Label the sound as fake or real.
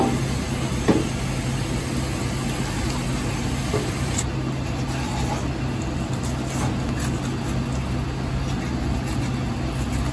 real